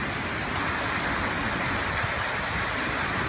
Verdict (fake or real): real